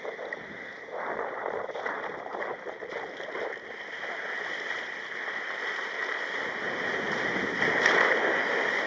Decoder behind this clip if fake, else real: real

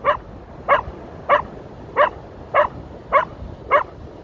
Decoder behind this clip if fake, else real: real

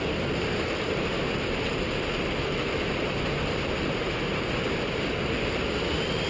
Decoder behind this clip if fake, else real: real